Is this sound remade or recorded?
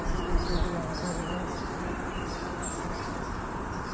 remade